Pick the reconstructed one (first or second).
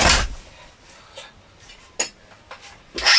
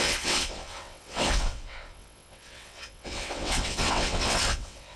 second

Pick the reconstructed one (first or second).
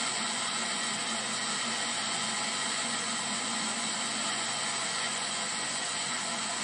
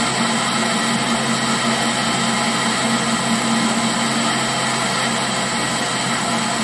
first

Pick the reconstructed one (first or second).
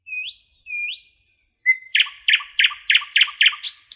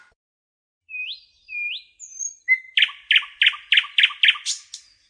first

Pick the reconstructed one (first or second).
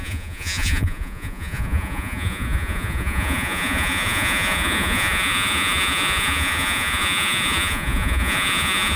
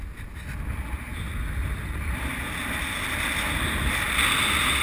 first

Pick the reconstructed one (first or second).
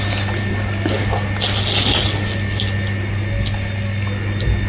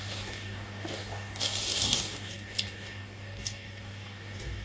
second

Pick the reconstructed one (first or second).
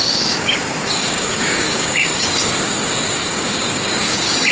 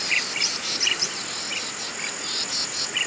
first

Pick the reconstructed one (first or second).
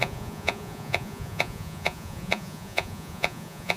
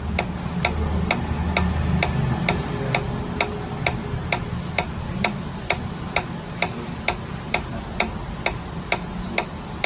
first